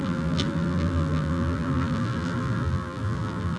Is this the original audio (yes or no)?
no